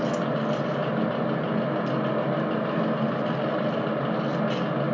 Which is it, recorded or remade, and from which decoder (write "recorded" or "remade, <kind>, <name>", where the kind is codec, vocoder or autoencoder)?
recorded